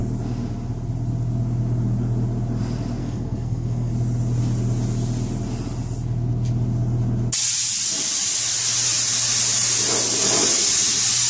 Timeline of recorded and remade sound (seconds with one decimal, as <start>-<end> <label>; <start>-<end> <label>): 0.0-3.0 recorded; 3.0-3.9 remade; 3.9-11.3 recorded